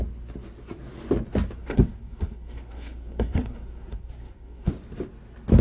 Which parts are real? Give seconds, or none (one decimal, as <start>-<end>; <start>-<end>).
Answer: 0.0-1.6; 4.7-5.6